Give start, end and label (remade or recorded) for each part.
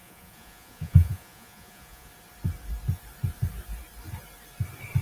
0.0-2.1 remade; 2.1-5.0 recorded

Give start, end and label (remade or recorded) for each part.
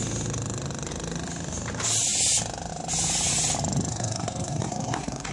0.0-3.9 recorded; 3.9-5.3 remade